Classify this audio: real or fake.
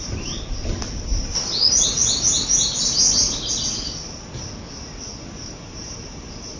real